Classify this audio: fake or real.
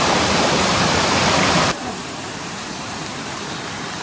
fake